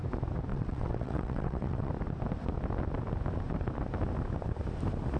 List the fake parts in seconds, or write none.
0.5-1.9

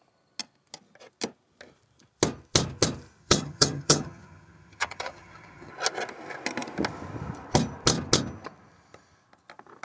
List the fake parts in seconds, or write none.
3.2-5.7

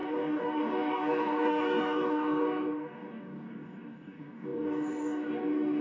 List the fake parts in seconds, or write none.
0.0-5.8

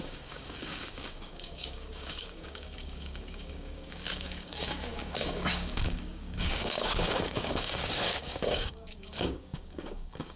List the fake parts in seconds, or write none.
0.0-10.4

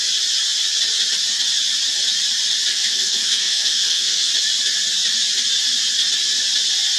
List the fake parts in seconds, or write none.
2.7-4.3

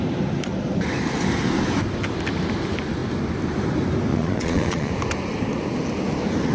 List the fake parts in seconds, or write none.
4.1-4.9

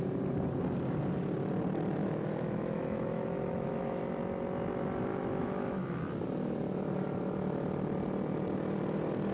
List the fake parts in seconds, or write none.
2.0-4.0; 5.1-6.0